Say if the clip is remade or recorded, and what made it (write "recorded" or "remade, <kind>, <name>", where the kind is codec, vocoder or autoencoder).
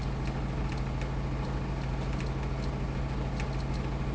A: recorded